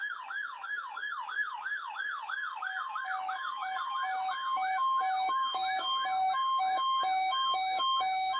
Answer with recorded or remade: remade